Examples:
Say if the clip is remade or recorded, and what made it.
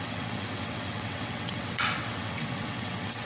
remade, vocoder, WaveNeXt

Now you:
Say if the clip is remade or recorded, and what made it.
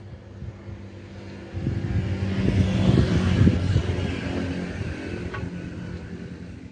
recorded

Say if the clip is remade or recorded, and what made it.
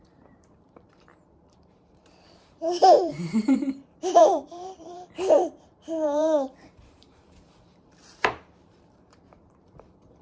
remade, vocoder, BigVGAN v2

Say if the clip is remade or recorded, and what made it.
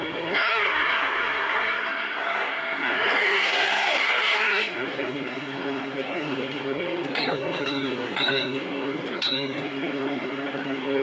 remade, codec, SNAC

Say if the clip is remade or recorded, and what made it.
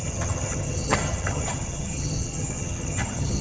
remade, vocoder, HiFi-GAN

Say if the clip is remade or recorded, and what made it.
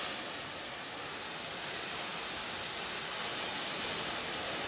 recorded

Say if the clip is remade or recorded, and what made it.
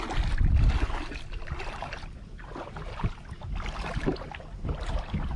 recorded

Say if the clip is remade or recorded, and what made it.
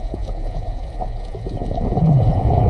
remade, vocoder, Vocos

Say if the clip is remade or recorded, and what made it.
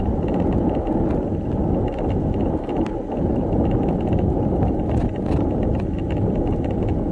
recorded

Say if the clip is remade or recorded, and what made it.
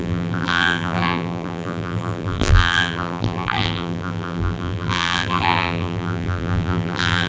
remade, vocoder, BigVGAN v2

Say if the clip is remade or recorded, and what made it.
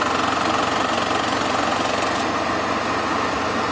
recorded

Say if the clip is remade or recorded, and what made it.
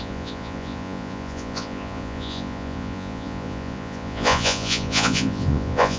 remade, vocoder, Vocos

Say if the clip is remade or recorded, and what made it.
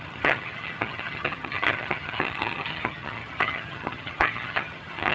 remade, vocoder, HiFi-GAN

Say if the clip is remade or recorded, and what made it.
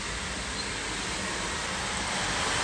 recorded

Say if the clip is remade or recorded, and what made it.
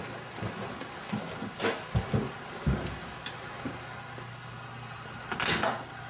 recorded